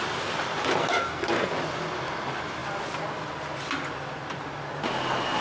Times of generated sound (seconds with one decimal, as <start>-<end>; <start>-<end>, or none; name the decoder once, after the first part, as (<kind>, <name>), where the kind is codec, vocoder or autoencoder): 0.8-1.5 (codec, SNAC)